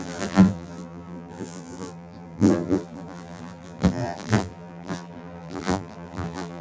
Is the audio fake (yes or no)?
yes